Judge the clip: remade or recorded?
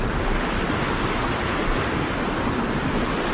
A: recorded